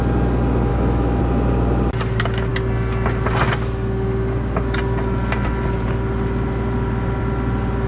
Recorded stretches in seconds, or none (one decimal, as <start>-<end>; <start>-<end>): 0.0-0.7; 1.2-7.9